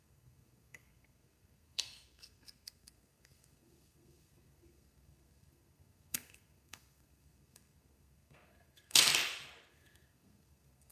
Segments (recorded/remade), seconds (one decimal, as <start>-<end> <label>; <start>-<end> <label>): 0.0-9.1 remade; 9.1-9.7 recorded; 9.7-10.9 remade